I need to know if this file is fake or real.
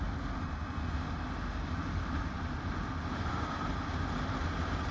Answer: real